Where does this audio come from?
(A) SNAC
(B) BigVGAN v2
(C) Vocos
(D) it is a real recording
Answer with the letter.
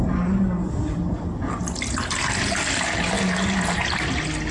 D